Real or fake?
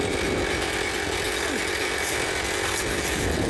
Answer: real